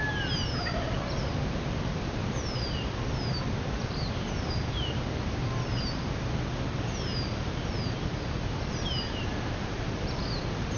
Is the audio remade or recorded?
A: recorded